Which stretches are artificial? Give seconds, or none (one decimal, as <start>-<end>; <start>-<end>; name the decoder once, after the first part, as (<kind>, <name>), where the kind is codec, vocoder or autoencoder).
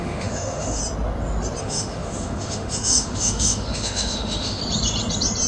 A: 0.0-0.8 (autoencoder, DAC-VAE); 1.6-4.6